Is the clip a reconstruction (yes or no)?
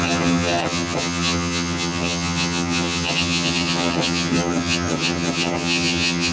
yes